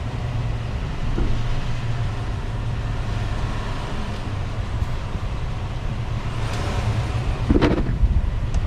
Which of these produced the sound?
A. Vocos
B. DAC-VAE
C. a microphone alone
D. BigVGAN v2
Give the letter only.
D